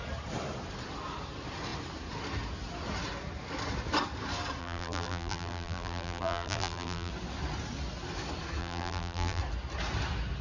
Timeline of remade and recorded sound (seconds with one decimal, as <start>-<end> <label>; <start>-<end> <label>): 0.0-4.6 recorded; 4.6-7.1 remade; 7.1-8.6 recorded; 8.6-9.4 remade; 9.4-10.4 recorded